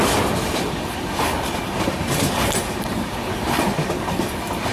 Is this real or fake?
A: real